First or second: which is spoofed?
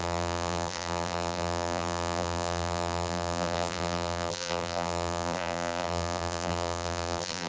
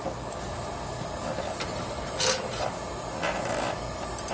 first